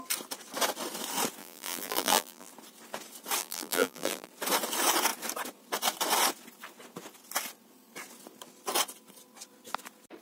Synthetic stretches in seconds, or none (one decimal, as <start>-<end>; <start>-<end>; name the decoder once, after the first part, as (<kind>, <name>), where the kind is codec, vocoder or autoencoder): 1.4-2.5 (vocoder, BigVGAN v2); 3.4-4.3